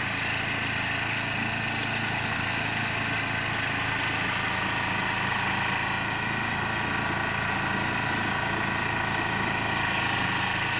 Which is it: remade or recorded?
recorded